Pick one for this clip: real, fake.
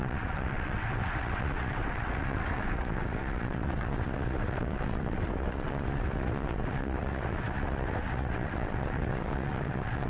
fake